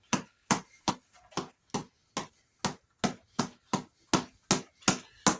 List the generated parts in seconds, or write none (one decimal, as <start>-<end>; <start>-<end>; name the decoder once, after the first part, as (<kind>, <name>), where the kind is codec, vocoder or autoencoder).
0.4-0.9 (vocoder, BigVGAN v2)